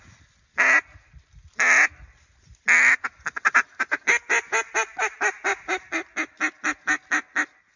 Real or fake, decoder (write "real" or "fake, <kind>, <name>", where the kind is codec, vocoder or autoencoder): real